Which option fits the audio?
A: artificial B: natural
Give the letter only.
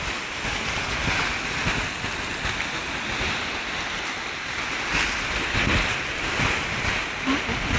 B